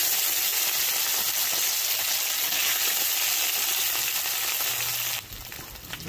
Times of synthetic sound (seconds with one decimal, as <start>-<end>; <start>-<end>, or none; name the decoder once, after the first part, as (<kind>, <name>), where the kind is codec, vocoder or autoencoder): none